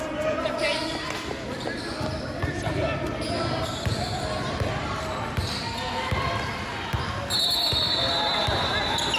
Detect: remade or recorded recorded